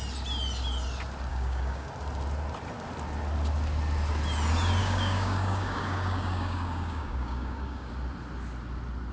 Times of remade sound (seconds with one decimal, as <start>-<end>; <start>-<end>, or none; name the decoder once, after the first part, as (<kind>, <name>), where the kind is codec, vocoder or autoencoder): 1.3-1.9 (codec, DAC); 4.8-7.9

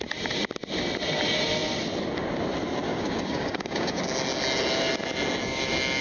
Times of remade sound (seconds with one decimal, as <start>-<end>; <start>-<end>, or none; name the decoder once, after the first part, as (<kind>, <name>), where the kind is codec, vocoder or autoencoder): 2.9-4.0 (codec, DAC)